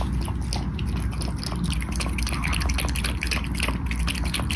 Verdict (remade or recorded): recorded